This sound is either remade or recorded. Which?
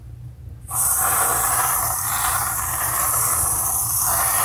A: remade